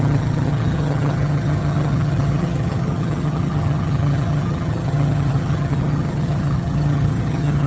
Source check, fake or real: fake